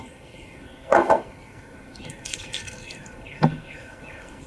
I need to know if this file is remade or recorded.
remade